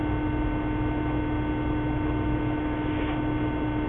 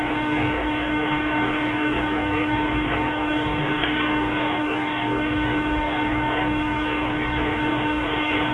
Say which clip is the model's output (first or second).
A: second